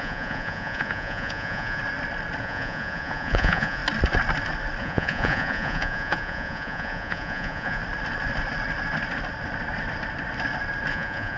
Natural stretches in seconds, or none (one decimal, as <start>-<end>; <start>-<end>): 1.8-2.4; 3.8-4.8; 7.8-10.9